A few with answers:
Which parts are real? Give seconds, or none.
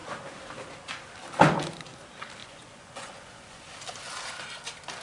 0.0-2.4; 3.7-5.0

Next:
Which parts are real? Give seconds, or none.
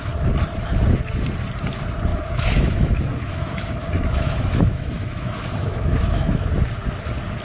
0.0-2.1; 6.5-7.4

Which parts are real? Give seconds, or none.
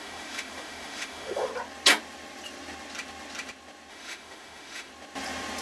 1.5-3.9; 4.9-5.6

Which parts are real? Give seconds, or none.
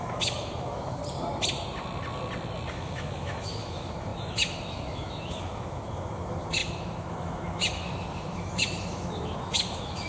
1.0-2.7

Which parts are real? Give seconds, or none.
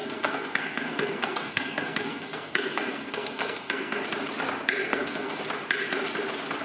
4.0-4.8; 5.4-6.6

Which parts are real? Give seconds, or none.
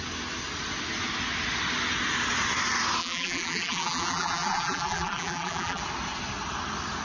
0.0-3.0; 5.8-7.0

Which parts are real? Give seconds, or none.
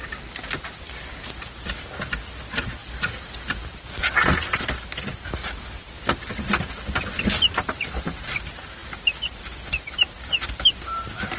0.0-2.8; 7.1-8.8; 10.8-11.4